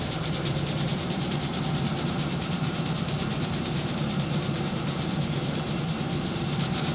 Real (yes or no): no